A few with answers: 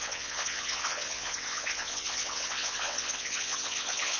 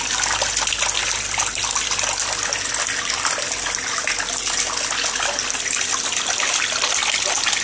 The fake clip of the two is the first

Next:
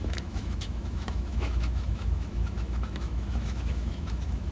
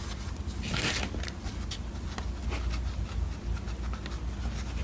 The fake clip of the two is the first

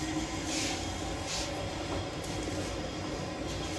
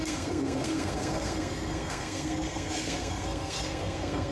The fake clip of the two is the second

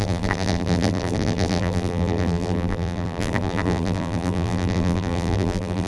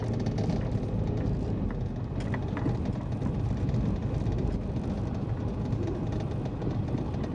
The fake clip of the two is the first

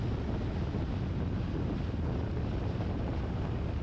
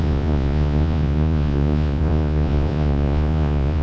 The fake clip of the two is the second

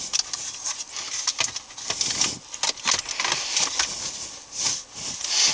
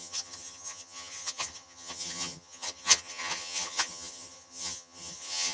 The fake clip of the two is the second